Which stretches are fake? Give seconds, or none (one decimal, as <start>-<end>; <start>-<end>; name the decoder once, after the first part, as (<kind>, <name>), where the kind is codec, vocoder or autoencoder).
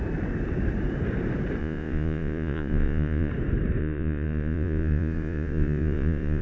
1.6-3.3 (vocoder, Vocos); 3.8-6.4